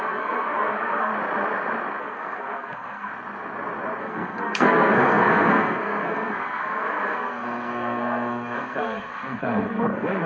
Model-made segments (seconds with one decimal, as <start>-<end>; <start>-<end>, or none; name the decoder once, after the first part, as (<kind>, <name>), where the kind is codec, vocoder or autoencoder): 0.0-1.1 (codec, SNAC); 2.0-3.1; 4.0-10.3